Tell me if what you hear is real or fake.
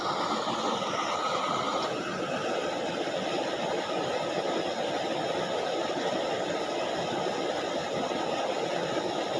real